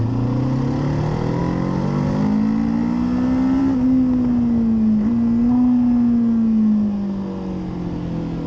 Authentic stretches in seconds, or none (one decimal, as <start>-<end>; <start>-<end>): 0.0-8.5